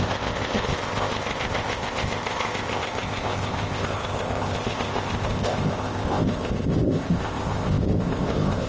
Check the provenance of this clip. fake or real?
fake